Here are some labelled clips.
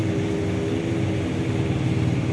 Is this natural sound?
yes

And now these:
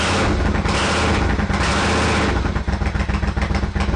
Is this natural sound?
yes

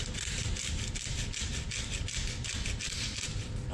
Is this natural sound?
yes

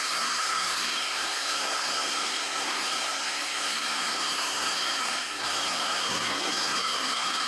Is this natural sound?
no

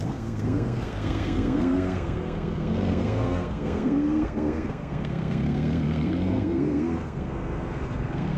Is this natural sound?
no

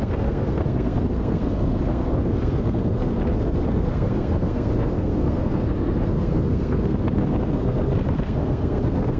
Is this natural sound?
no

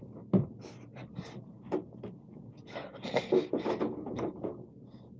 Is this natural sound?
yes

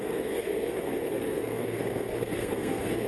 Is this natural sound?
no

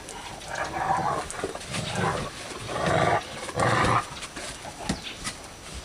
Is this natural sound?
yes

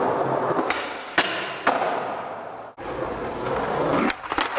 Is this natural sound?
yes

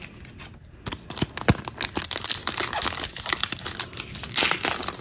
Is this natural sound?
yes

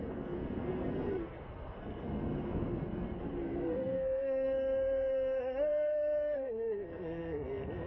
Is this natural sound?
no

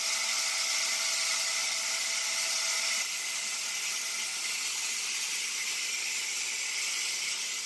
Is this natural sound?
yes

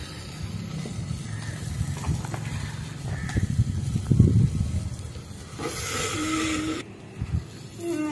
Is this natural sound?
yes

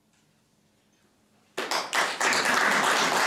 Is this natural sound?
yes